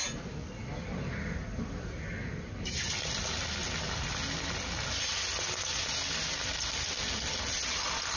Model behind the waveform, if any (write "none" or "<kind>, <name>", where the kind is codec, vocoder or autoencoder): none